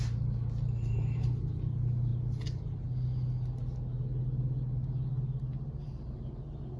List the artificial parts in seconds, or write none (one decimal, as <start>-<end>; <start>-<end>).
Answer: none